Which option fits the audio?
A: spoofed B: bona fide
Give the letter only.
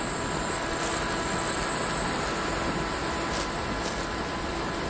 B